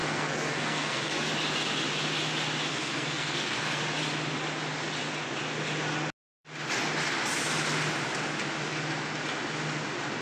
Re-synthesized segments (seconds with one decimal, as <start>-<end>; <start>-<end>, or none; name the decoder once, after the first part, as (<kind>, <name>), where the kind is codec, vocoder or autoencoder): 0.0-1.3 (codec, SNAC); 2.7-3.8